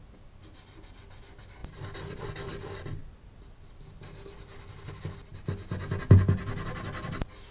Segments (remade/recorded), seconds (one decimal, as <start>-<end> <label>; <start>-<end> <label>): 0.0-7.5 recorded